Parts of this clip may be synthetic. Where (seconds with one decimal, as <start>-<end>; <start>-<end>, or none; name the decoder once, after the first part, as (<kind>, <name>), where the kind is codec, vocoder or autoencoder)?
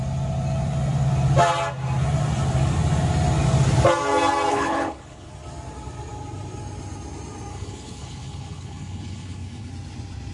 4.5-5.3 (codec, HILCodec); 7.5-9.7